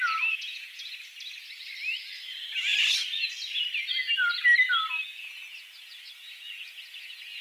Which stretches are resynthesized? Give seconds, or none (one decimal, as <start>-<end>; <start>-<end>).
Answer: 0.0-1.1; 5.2-7.4

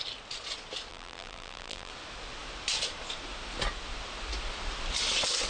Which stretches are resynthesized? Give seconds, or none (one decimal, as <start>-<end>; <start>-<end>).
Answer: 0.9-1.9

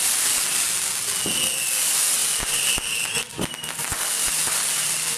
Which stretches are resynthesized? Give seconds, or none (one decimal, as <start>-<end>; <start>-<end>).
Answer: none

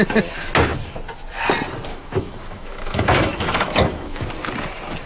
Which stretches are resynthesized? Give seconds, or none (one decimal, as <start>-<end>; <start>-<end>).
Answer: 1.9-4.2

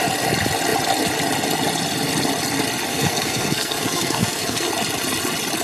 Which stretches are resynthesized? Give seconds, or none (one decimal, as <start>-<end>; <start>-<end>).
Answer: 2.9-4.7